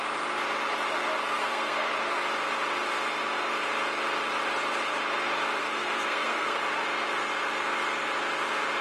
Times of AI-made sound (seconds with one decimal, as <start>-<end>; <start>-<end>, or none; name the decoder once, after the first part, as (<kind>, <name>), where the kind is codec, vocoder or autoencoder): 1.4-1.9 (codec, SNAC); 5.6-6.6